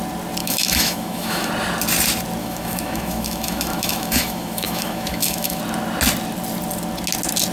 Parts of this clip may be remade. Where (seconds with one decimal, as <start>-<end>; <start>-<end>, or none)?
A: 0.4-1.5; 2.4-5.6